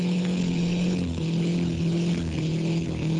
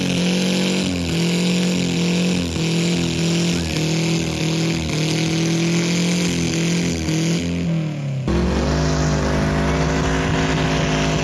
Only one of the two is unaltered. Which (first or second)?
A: second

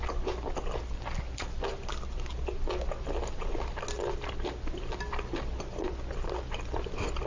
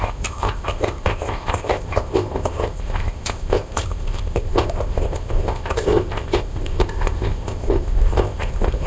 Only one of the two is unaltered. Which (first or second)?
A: first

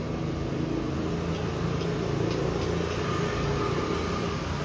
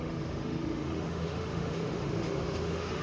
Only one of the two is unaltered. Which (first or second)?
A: first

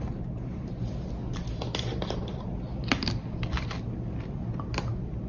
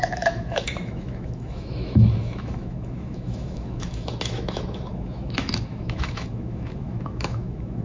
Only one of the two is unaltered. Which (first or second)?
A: first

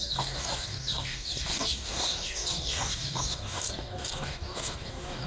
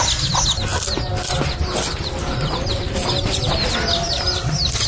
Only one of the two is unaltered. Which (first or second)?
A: second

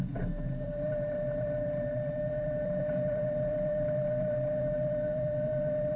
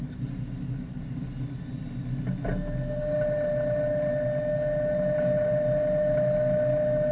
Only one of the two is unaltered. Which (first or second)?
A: second